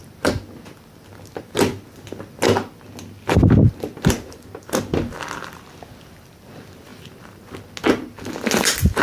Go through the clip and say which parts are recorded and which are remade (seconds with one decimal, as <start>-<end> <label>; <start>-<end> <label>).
0.0-9.0 recorded